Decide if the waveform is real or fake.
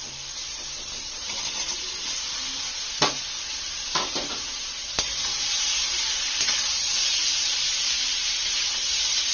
real